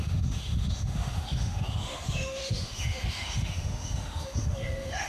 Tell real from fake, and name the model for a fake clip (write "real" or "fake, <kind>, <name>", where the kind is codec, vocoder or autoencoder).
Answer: fake, autoencoder, DAC-VAE